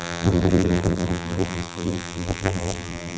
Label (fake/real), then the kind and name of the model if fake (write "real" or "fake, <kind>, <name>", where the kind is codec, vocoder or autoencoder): fake, vocoder, BigVGAN v2